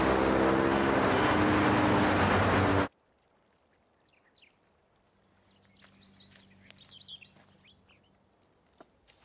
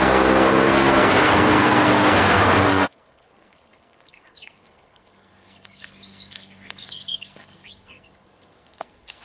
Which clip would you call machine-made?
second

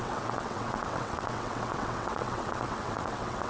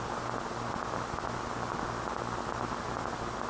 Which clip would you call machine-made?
first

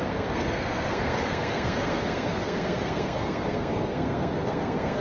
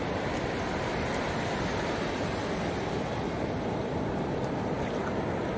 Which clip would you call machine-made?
first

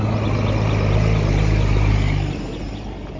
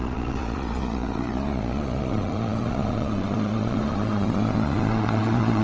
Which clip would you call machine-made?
second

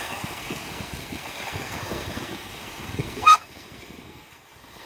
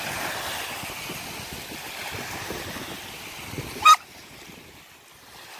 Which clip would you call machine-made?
first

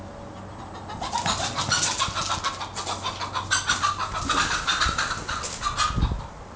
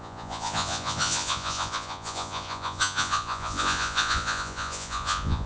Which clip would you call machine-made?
second